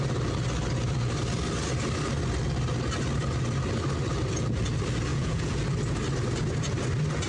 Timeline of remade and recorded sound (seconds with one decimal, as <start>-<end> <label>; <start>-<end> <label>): 0.0-5.1 recorded; 5.1-5.6 remade; 5.6-7.3 recorded